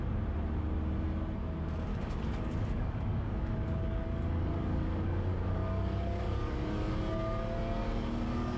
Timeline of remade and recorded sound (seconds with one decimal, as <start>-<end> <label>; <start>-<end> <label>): 0.0-1.9 recorded; 1.9-7.0 remade; 7.0-7.8 recorded; 7.8-8.6 remade